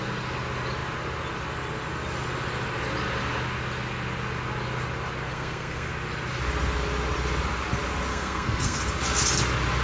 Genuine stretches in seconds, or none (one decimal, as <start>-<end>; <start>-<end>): 0.0-5.3; 5.9-8.1; 8.8-9.8

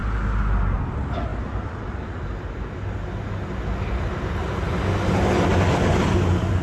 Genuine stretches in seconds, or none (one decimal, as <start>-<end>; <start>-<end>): 0.0-6.6

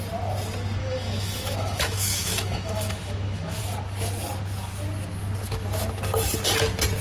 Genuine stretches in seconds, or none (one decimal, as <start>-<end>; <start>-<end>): 0.0-0.8; 3.6-7.0

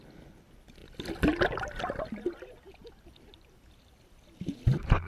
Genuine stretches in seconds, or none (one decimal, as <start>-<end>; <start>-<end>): 0.0-5.1

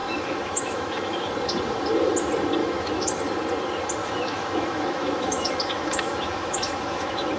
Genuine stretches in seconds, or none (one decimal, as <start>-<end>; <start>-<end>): 1.3-2.6; 3.2-4.0